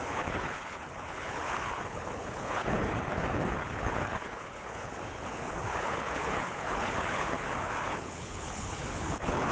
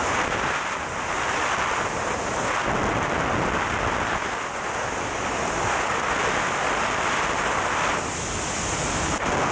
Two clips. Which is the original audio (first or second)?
second